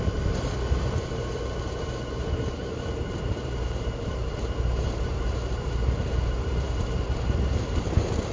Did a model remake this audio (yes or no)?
yes